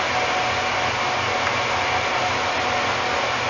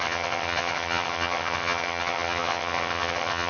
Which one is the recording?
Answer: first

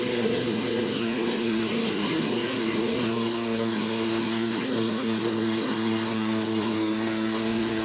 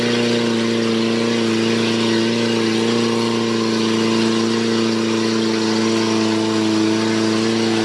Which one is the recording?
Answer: second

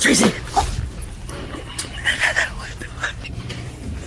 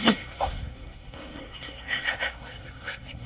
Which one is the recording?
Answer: first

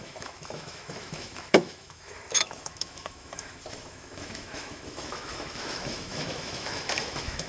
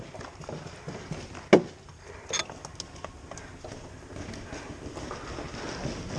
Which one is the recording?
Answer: second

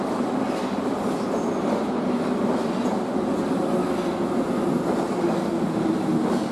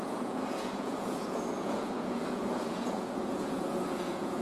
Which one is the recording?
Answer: first